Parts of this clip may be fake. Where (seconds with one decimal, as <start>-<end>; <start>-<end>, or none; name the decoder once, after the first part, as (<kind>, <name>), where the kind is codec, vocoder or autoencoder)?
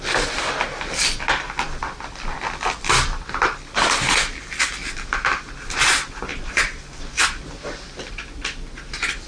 none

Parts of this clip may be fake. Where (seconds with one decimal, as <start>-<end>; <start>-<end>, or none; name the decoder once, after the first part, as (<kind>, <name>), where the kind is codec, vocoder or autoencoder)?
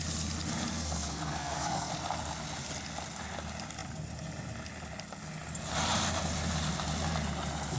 0.7-1.9 (codec, SNAC)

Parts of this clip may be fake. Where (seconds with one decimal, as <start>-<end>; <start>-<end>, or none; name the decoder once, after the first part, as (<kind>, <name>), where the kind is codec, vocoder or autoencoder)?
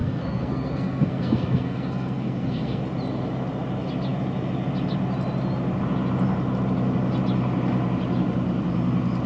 0.0-2.8 (codec, SNAC)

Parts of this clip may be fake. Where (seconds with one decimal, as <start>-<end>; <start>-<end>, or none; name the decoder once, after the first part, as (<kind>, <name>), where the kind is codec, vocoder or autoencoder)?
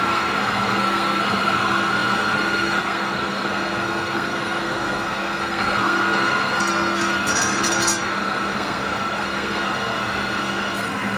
0.0-11.2 (codec, SNAC)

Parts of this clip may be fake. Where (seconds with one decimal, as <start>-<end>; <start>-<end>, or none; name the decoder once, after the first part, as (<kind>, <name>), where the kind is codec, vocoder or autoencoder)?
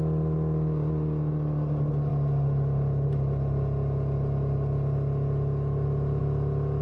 none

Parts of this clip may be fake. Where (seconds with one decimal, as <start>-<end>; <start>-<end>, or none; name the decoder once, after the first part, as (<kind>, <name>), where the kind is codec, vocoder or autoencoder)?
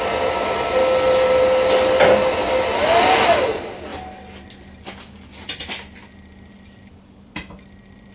none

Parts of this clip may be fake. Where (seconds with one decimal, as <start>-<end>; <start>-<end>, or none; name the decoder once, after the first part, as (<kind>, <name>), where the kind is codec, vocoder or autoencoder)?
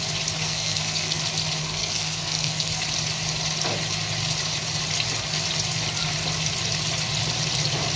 0.4-1.2 (codec, SNAC); 1.6-2.8